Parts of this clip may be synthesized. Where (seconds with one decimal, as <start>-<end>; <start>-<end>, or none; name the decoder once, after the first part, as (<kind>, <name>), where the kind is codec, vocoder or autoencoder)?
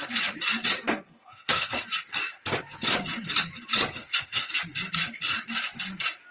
0.8-1.7 (codec, SNAC); 4.0-4.5